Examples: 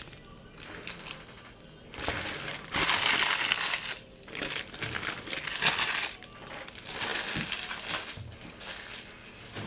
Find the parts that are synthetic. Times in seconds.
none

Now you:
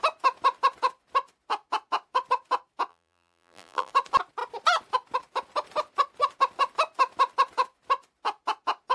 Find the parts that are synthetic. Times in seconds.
2.9-3.9 (vocoder, BigVGAN v2)

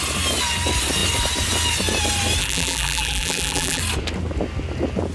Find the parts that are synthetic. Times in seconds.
2.4-3.8 (vocoder, BigVGAN v2)

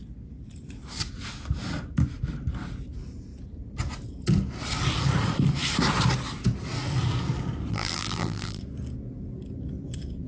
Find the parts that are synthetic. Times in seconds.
7.7-8.6 (vocoder, BigVGAN v2)

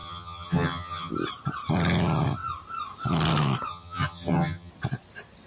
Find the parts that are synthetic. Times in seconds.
0.0-1.1 (vocoder, HiFi-GAN); 3.7-4.7

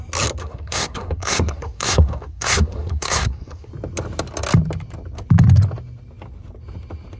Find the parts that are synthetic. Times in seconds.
0.4-3.7 (codec, SNAC)

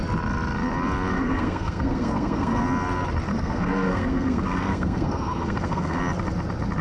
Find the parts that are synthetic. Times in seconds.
1.1-2.6 (codec, SNAC); 3.3-6.0

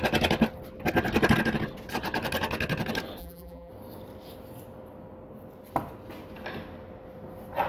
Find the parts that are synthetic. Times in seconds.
3.2-3.7 (vocoder, BigVGAN v2)